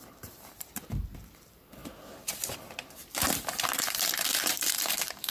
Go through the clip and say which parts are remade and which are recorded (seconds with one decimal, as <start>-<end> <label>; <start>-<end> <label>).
0.0-5.3 remade